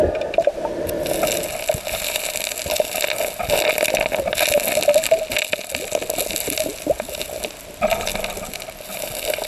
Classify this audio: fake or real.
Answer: real